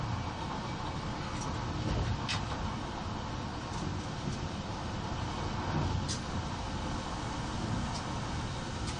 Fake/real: real